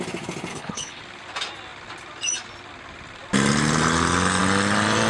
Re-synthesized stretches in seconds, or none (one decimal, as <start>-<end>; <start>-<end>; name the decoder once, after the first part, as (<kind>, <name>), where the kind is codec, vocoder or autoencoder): 0.5-1.0 (codec, HILCodec)